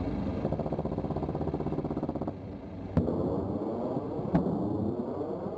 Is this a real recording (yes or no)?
yes